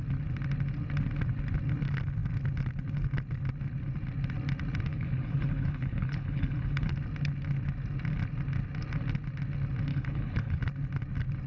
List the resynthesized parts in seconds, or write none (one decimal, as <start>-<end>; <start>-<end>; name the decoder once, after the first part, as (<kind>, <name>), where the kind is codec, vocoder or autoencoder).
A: 4.9-6.9 (codec, HILCodec); 9.9-10.6